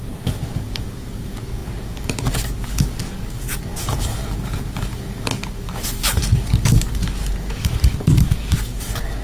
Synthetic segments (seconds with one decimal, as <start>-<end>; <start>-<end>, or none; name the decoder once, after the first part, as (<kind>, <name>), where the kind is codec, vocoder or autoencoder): 0.0-9.2 (codec, DAC)